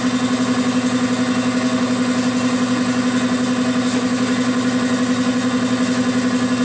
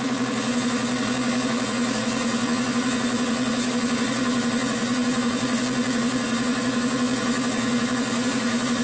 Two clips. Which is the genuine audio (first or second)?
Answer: first